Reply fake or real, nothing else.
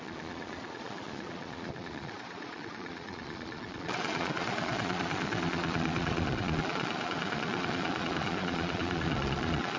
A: fake